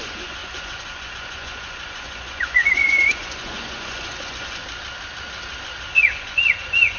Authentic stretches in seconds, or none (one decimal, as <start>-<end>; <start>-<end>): 4.6-5.9